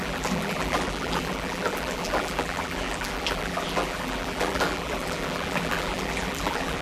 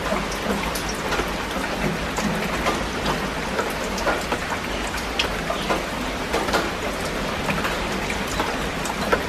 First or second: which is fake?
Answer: first